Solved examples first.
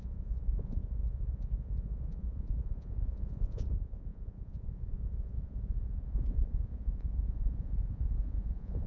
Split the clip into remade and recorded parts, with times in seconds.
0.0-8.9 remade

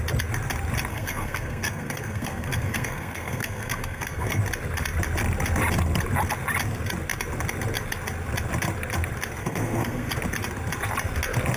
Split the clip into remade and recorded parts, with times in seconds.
0.0-0.9 recorded; 0.9-4.4 remade; 4.4-9.4 recorded; 9.4-10.1 remade; 10.1-11.6 recorded

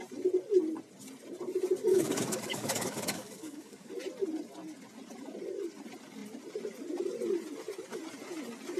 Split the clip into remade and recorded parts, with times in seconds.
0.0-1.9 recorded; 1.9-3.9 remade; 3.9-8.8 recorded

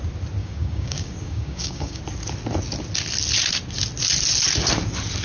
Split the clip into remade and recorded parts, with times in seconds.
0.0-0.4 recorded; 0.4-2.0 remade; 2.0-5.2 recorded